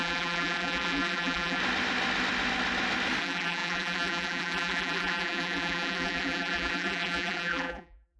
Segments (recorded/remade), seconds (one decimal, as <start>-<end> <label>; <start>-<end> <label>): 0.0-1.6 remade; 1.6-3.2 recorded; 3.2-8.2 remade